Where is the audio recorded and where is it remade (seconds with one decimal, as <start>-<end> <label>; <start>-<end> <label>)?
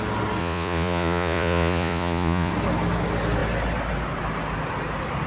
0.0-0.4 recorded; 0.4-2.5 remade; 2.5-5.3 recorded